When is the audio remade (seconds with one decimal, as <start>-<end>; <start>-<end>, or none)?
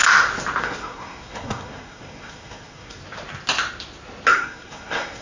0.6-3.0; 4.3-5.2